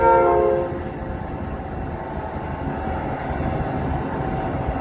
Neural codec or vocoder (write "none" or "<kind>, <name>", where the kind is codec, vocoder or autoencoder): none